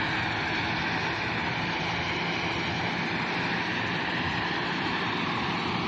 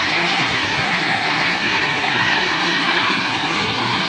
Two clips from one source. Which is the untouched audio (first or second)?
first